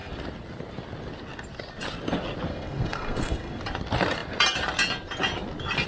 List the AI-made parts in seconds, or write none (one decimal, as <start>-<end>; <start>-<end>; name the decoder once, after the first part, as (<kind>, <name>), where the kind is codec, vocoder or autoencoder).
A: 2.5-3.6 (codec, SNAC)